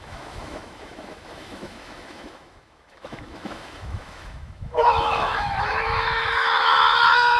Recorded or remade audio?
remade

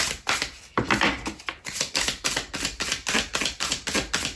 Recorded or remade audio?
recorded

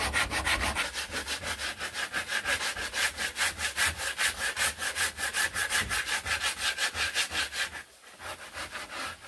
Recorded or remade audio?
recorded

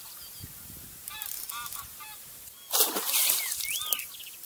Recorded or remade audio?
recorded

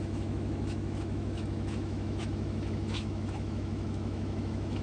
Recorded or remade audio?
remade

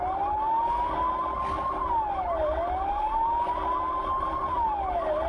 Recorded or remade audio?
recorded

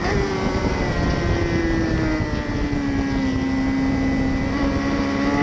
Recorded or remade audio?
recorded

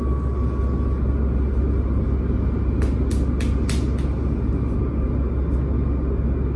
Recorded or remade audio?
recorded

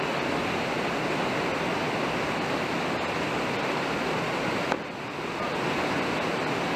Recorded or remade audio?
recorded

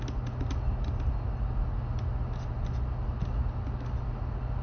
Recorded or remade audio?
recorded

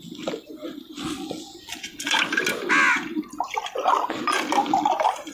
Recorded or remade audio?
recorded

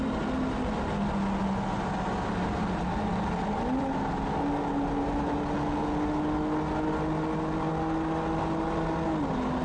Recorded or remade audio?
recorded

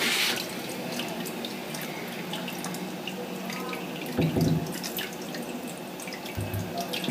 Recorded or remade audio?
recorded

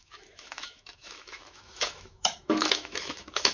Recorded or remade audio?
remade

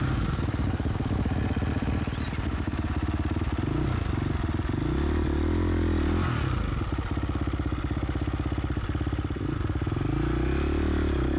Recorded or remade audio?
recorded